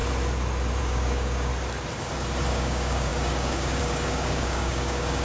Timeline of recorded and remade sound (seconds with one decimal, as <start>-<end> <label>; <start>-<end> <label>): 0.0-0.8 recorded; 0.8-1.5 remade; 1.5-2.5 recorded; 2.5-5.2 remade